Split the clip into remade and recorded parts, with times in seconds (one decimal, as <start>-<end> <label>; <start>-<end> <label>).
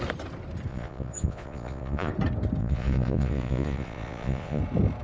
0.0-0.7 recorded; 0.7-2.1 remade; 2.1-2.6 recorded; 2.6-4.6 remade; 4.6-5.0 recorded